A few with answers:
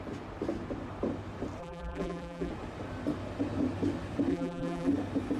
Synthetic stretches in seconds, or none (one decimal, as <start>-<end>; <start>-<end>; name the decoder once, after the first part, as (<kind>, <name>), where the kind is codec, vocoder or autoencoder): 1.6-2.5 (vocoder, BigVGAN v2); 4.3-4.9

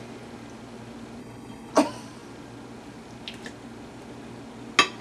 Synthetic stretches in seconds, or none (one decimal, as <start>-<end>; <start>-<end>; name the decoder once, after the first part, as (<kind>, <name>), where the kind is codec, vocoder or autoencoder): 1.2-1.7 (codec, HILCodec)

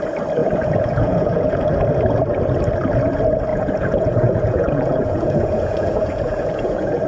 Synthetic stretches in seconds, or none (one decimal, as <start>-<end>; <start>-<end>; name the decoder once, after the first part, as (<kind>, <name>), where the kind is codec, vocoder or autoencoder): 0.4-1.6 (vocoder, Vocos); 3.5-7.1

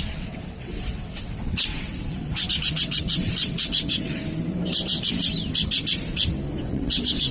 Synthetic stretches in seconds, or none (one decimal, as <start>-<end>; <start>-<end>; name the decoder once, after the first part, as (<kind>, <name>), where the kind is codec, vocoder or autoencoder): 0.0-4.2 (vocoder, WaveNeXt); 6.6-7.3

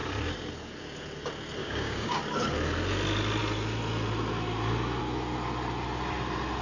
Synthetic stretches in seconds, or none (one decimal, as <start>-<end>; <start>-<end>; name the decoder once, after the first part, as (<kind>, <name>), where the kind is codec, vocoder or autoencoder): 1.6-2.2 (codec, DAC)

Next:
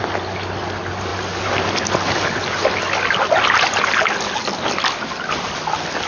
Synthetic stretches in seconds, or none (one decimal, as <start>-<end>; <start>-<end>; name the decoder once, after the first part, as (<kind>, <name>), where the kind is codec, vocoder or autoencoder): none

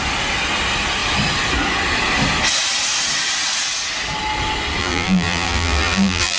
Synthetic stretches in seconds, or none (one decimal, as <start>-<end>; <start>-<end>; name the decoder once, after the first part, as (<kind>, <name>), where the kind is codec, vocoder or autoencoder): 4.8-6.4 (vocoder, BigVGAN v2)